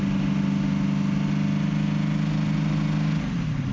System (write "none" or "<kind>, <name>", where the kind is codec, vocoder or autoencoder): none